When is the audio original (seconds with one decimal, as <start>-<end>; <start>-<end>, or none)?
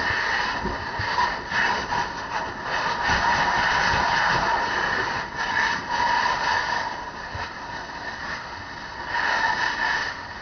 0.0-10.4